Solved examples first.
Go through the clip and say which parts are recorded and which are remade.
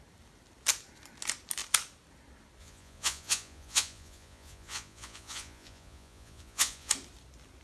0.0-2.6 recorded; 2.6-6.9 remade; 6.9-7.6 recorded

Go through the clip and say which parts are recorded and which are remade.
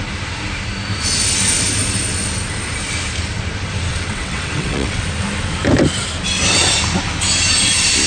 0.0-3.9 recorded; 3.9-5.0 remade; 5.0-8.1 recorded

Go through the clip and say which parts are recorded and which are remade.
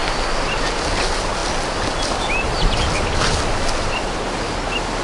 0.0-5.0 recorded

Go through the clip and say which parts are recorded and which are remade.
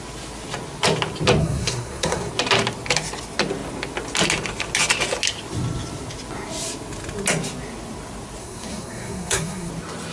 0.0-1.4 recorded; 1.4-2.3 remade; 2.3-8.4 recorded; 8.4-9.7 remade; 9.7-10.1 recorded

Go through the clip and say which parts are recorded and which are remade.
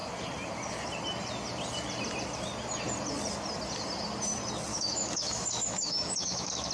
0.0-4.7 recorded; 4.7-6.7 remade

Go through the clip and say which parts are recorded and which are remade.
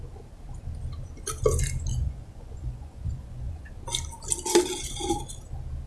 0.0-1.9 recorded; 1.9-3.7 remade; 3.7-5.9 recorded